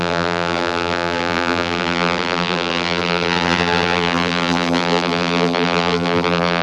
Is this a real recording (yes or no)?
no